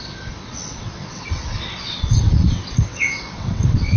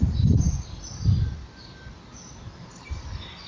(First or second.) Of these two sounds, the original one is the second